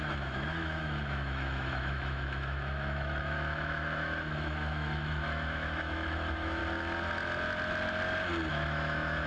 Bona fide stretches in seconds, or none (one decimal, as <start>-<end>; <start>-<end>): 6.6-8.5